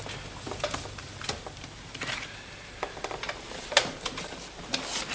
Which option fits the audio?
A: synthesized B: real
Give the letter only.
B